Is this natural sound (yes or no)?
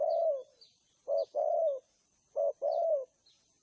yes